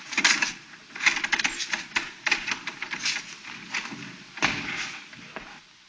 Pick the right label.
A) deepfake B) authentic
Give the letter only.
B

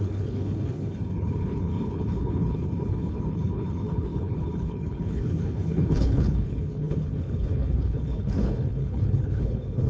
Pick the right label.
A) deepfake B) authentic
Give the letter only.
A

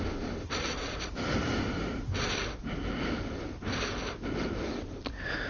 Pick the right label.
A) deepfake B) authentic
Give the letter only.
B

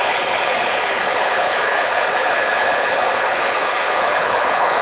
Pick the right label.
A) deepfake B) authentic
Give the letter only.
A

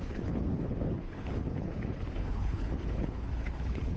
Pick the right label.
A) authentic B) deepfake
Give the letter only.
B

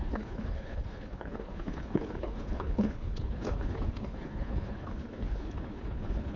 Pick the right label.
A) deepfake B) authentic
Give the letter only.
A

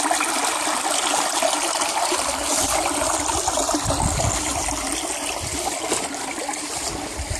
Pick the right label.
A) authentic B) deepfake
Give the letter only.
A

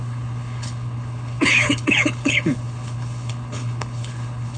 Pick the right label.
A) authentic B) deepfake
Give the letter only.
B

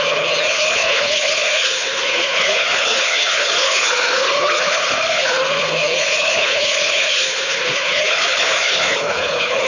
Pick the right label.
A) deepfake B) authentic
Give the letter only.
A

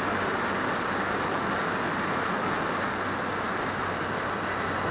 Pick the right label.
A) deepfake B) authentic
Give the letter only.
B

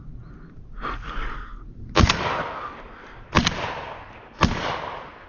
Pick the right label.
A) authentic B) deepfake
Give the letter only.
A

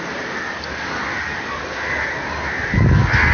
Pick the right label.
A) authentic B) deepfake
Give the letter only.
A